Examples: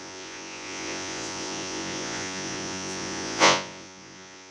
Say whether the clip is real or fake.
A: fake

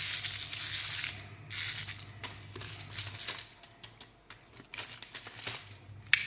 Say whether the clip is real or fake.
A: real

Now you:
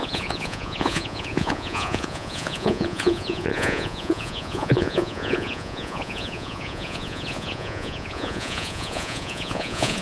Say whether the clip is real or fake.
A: fake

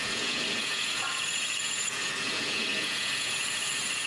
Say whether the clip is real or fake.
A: fake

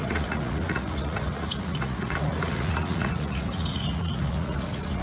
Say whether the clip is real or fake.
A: fake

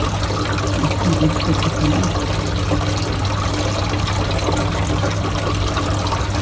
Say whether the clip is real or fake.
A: real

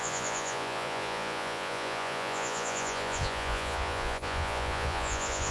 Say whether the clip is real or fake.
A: fake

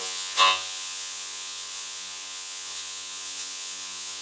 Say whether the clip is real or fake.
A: fake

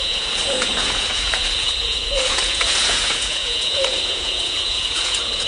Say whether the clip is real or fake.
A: fake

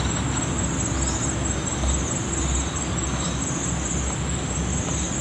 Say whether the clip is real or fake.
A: real